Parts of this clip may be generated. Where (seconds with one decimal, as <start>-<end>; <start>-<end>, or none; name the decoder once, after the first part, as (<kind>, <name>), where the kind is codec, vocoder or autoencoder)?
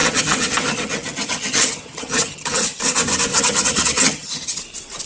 0.0-2.8 (vocoder, HiFi-GAN); 3.3-4.6